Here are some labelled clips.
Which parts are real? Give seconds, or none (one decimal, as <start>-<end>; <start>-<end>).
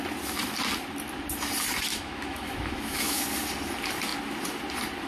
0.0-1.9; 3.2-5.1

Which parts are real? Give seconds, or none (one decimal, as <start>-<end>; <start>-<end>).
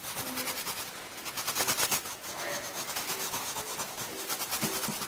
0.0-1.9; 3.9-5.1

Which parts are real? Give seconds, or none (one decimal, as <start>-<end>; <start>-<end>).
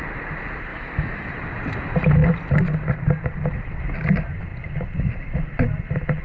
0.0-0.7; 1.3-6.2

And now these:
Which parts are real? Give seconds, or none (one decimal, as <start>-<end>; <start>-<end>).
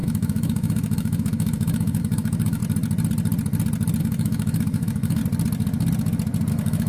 2.6-4.0; 5.2-6.5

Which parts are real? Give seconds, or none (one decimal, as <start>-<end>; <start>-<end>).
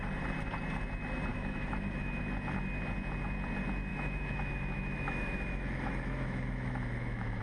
0.0-1.3; 2.2-3.9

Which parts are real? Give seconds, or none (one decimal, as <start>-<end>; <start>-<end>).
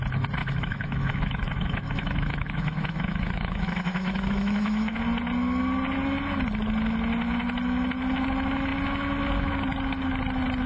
0.0-0.4; 5.0-10.7